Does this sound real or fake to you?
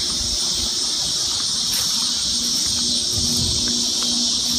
real